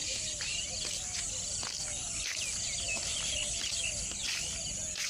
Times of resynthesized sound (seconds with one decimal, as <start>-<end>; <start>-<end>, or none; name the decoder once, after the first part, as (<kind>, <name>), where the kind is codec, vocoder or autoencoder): none